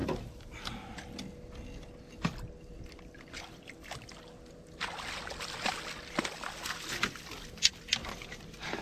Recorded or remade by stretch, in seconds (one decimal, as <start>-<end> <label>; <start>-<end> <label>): 0.0-8.8 recorded